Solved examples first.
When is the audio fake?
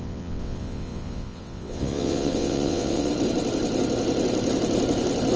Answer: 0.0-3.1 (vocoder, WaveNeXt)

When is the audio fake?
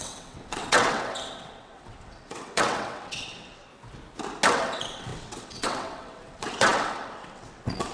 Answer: 0.0-3.7 (vocoder, WaveNeXt); 4.5-7.9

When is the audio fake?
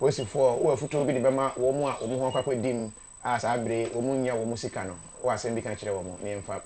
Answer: none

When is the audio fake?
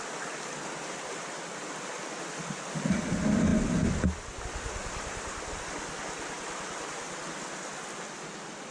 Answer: none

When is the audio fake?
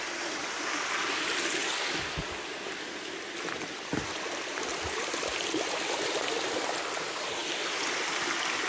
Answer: none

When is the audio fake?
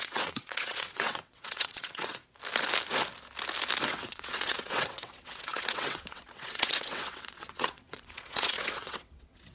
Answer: 0.0-2.2 (vocoder, WaveNeXt); 3.9-9.5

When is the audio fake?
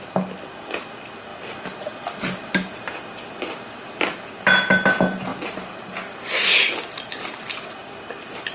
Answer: none